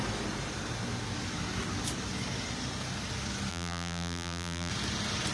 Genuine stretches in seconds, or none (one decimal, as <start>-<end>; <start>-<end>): 0.0-3.5; 4.7-5.3